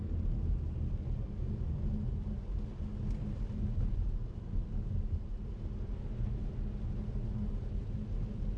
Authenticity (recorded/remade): recorded